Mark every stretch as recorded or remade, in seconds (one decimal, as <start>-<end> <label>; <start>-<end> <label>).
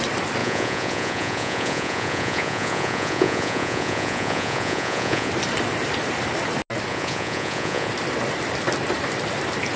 0.0-0.4 recorded; 0.4-5.3 remade; 5.3-6.9 recorded; 6.9-7.9 remade; 7.9-9.8 recorded